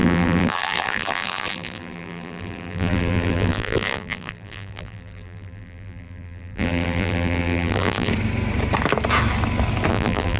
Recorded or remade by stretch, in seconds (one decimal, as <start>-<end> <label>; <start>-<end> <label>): 0.0-8.1 remade; 8.1-9.9 recorded; 9.9-10.4 remade